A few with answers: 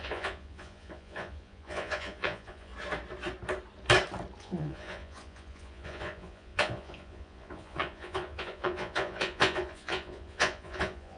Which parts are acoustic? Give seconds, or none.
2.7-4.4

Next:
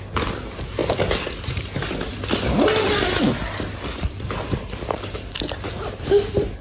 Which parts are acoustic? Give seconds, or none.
0.0-6.6

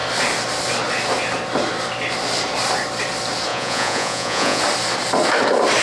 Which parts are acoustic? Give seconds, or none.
0.0-3.5; 4.6-5.8

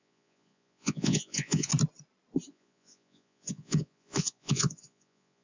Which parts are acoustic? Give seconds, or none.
1.7-2.5

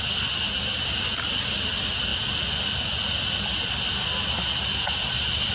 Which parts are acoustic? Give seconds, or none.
0.0-5.5

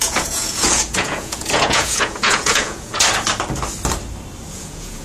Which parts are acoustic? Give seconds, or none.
2.9-4.5

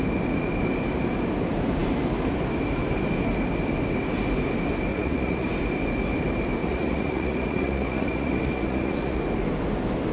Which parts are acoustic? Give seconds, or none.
0.0-4.9; 5.5-6.6; 9.2-10.1

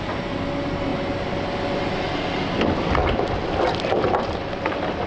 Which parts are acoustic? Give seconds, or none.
0.0-5.1